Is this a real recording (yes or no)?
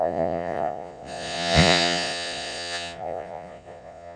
no